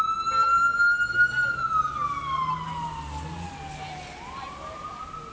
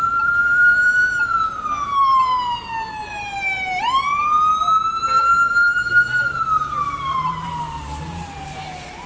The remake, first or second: second